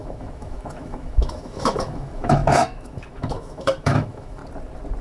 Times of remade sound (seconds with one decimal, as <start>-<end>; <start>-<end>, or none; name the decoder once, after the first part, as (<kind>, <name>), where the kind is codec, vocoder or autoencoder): 0.0-4.4 (autoencoder, DAC-VAE)